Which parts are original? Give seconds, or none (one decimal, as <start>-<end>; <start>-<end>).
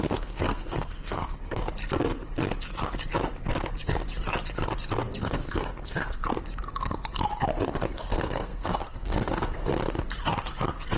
1.6-5.2; 6.2-7.9; 9.7-11.0